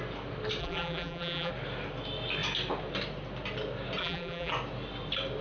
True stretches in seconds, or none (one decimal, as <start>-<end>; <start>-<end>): 0.0-0.6; 1.5-4.0; 4.5-5.4